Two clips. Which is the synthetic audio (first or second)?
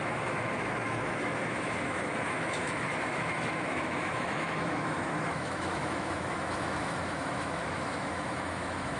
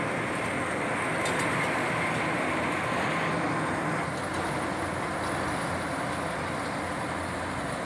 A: first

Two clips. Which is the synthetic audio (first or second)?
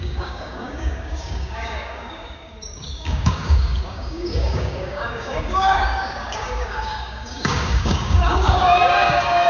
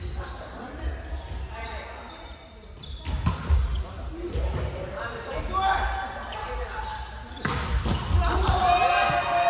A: first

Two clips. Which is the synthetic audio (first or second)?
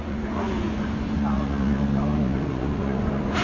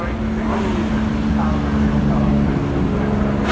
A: first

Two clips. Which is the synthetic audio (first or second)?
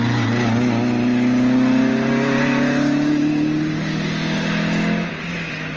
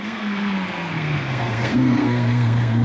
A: second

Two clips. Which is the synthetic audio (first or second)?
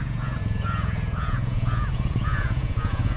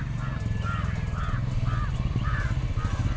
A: first